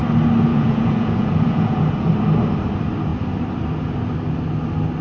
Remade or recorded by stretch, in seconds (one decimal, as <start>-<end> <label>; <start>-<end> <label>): 0.0-0.5 recorded; 0.5-2.1 remade; 2.1-5.0 recorded

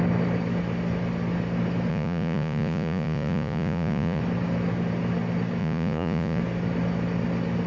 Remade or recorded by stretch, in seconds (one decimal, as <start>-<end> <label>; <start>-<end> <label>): 0.0-1.9 recorded; 1.9-4.2 remade; 4.2-5.6 recorded; 5.6-6.4 remade; 6.4-7.7 recorded

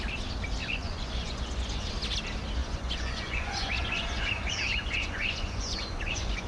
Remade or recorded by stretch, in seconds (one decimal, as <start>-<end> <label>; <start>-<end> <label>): 0.0-0.6 recorded; 0.6-1.9 remade; 1.9-2.6 recorded; 2.6-6.5 remade

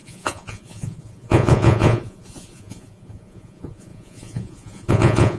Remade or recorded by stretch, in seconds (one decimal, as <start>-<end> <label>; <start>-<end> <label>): 0.0-5.4 remade